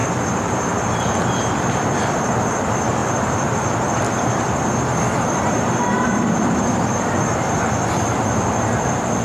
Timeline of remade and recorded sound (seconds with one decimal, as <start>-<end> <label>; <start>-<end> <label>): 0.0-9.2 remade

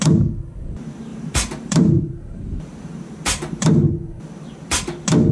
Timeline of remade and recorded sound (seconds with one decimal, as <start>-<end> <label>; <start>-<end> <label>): 0.0-1.1 recorded; 1.1-4.3 remade; 4.3-5.3 recorded

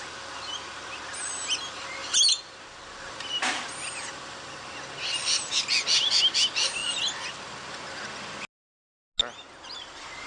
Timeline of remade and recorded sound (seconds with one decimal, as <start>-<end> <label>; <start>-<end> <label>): 0.0-10.3 recorded

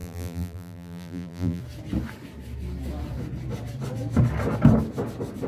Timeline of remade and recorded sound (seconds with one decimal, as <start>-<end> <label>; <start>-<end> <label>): 0.0-1.6 remade; 1.6-5.5 recorded

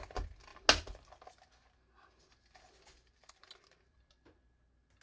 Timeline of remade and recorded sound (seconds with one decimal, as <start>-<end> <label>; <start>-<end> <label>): 0.0-5.0 recorded

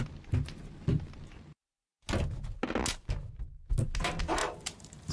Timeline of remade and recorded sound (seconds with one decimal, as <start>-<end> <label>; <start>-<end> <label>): 0.0-4.4 recorded; 4.4-5.1 remade